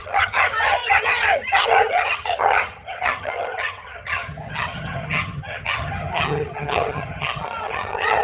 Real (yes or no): no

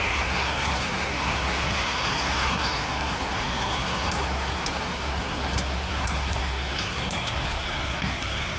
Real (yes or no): no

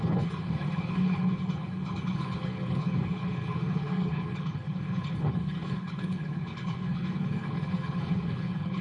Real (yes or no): no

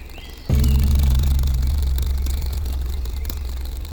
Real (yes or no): no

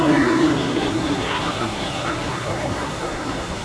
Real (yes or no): no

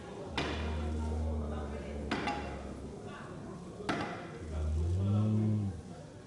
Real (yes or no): yes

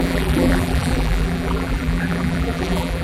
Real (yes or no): no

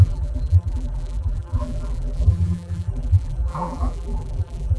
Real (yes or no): no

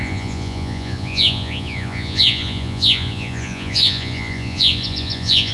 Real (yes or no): no